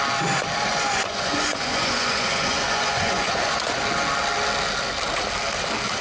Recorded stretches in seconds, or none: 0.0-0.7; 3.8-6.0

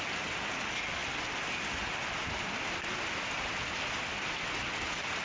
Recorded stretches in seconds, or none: 0.0-5.2

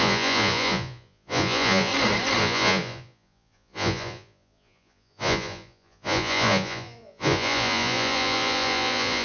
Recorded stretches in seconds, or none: 1.9-2.4

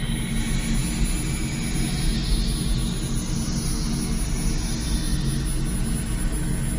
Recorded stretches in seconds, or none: 0.0-6.8

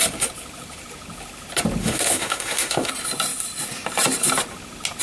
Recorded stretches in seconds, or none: 0.0-1.8; 2.9-5.0

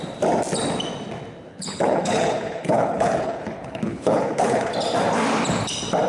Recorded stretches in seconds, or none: 0.0-1.5; 4.7-6.1

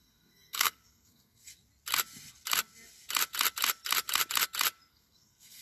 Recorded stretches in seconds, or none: 1.5-4.9